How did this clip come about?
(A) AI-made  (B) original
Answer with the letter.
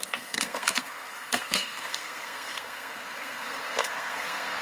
A